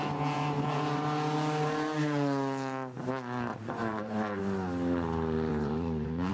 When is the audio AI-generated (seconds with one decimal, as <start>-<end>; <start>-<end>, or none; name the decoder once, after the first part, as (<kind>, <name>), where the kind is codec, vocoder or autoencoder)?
3.5-4.4 (vocoder, Vocos); 5.5-6.3